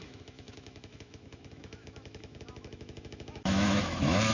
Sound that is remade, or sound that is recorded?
remade